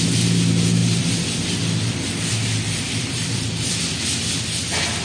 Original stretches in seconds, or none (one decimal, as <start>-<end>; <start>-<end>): 0.0-0.8; 3.8-5.0